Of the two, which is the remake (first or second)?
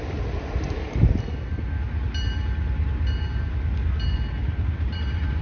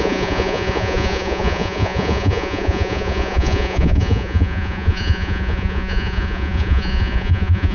second